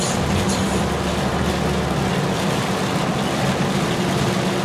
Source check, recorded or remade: recorded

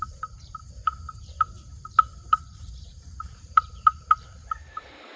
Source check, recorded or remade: remade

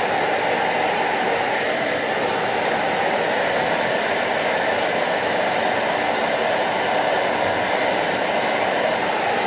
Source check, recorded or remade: remade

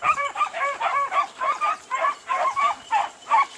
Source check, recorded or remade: remade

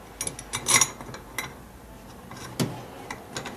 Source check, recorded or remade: recorded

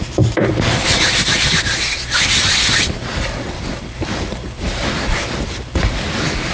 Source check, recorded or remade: remade